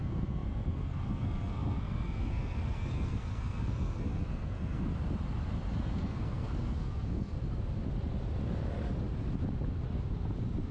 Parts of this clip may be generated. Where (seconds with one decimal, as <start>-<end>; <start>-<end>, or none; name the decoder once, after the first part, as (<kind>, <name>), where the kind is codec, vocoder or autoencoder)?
0.0-4.9 (codec, SNAC); 5.8-7.4